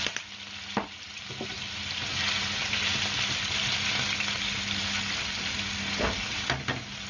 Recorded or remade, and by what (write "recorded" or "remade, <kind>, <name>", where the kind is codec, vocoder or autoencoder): recorded